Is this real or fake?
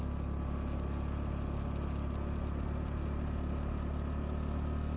real